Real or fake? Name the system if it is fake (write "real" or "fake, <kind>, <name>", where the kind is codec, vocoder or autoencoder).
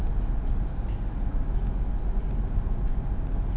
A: real